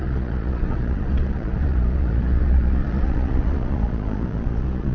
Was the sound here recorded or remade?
remade